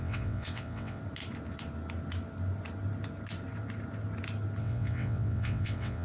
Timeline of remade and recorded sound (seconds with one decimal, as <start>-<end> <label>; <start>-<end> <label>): 0.0-1.0 remade; 1.0-4.6 recorded; 4.6-6.0 remade

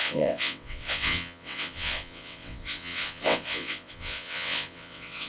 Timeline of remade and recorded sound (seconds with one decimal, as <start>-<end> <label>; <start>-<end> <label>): 0.0-5.3 remade

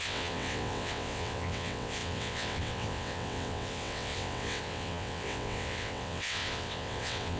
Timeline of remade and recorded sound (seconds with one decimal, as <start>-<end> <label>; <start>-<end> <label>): 0.0-7.4 remade

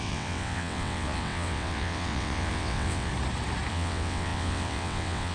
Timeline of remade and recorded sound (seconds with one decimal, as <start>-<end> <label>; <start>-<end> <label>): 0.0-3.1 remade; 3.1-3.7 recorded; 3.7-5.3 remade